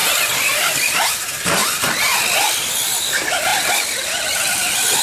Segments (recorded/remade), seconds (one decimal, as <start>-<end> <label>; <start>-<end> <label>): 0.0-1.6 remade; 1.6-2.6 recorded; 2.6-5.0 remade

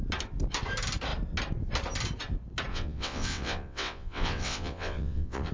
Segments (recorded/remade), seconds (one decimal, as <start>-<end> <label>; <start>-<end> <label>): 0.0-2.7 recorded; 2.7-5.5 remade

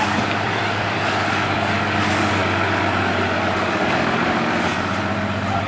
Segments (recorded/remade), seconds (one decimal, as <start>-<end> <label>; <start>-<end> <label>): 0.0-2.4 remade; 2.4-3.0 recorded; 3.0-4.7 remade; 4.7-5.7 recorded

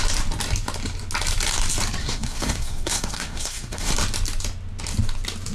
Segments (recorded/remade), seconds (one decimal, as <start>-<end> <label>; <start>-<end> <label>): 0.0-2.0 recorded; 2.0-3.9 remade; 3.9-5.5 recorded

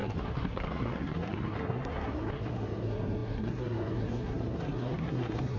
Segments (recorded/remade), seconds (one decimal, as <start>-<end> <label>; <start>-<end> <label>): 0.0-5.6 remade

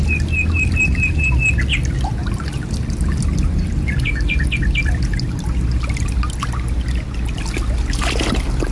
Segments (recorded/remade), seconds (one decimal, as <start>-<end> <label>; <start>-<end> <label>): 0.0-8.7 recorded

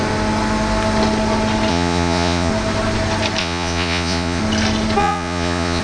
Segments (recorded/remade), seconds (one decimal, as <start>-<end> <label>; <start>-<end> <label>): 0.0-1.7 recorded; 1.7-2.5 remade; 2.5-3.4 recorded; 3.4-4.4 remade; 4.4-5.0 recorded; 5.0-5.8 remade

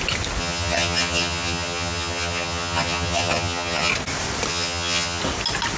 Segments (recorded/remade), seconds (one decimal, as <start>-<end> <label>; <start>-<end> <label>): 0.0-0.4 recorded; 0.4-3.9 remade; 3.9-4.5 recorded; 4.5-5.2 remade; 5.2-5.8 recorded